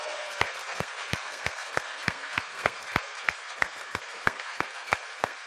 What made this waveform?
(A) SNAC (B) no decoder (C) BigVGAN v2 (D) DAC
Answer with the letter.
A